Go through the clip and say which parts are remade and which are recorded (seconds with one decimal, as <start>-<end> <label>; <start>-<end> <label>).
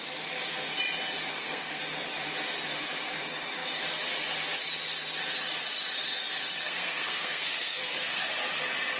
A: 0.0-1.3 recorded; 1.3-1.8 remade; 1.8-6.6 recorded; 6.6-8.3 remade; 8.3-9.0 recorded